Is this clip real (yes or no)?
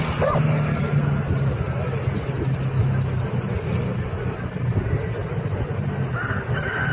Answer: yes